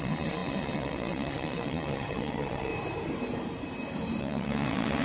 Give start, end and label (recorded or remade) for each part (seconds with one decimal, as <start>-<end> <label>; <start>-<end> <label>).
0.0-2.7 remade; 2.7-4.2 recorded; 4.2-5.0 remade